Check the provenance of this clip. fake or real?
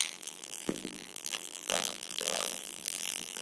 fake